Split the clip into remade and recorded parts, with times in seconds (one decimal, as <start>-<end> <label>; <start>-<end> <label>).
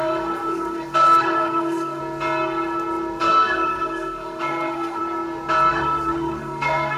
0.0-2.0 remade; 2.0-3.2 recorded; 3.2-5.0 remade; 5.0-5.7 recorded; 5.7-7.0 remade